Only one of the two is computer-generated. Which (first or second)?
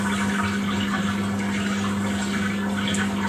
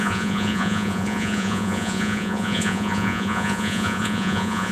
second